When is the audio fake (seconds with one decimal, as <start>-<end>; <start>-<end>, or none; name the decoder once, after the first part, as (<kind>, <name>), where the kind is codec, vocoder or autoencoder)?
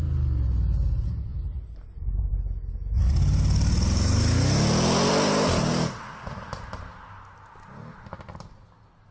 1.3-2.3 (vocoder, BigVGAN v2)